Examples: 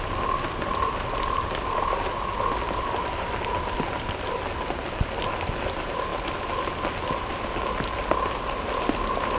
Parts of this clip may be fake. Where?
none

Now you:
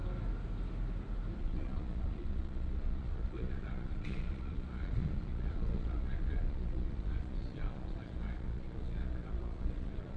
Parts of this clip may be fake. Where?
1.4-10.2 (vocoder, Vocos)

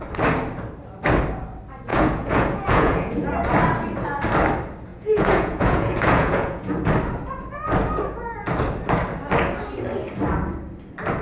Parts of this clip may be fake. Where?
1.9-3.3 (vocoder, Vocos); 4.9-6.9

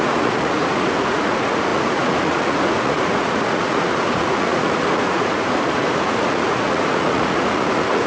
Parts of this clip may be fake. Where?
0.0-8.1 (vocoder, Vocos)

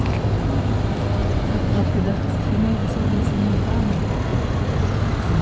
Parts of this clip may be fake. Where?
1.2-2.1 (vocoder, Vocos); 2.8-3.7; 4.3-4.9

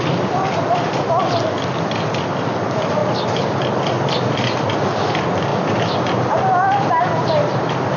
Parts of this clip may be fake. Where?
none